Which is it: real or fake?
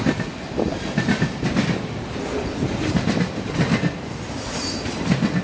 real